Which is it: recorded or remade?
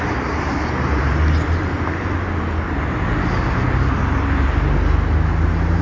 recorded